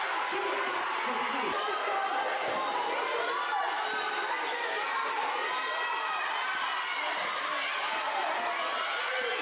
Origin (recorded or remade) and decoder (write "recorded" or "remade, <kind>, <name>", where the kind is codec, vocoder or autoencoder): recorded